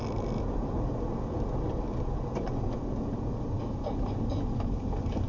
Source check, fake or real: real